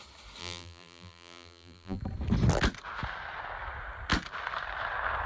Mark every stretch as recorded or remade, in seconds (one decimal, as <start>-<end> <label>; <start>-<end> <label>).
0.0-0.4 recorded; 0.4-2.0 remade; 2.0-5.3 recorded